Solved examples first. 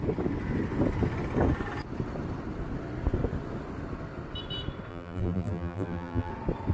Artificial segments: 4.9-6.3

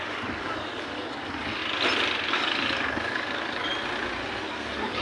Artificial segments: 0.0-1.6; 2.3-3.7; 4.5-5.0

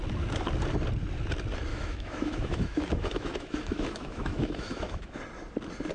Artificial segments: 1.7-5.2

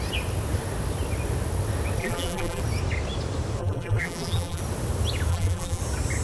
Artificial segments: 2.0-2.6; 3.6-4.6; 5.3-5.8

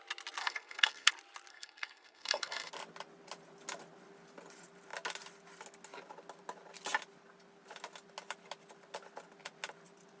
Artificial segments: 0.4-1.1; 1.5-2.7

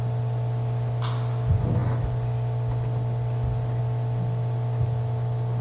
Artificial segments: none

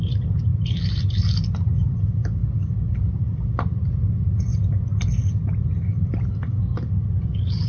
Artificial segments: none